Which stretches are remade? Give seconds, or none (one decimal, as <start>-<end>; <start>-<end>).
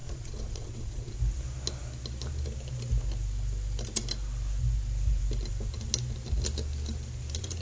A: 0.0-1.2